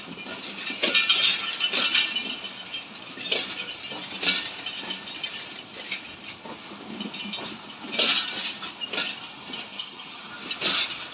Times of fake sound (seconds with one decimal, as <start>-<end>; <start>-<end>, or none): 9.7-10.3